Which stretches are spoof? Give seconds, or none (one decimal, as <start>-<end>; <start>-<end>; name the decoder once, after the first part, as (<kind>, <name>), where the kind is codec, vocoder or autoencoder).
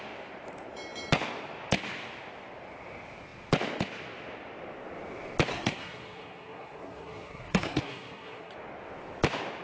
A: 5.5-8.5 (codec, SNAC)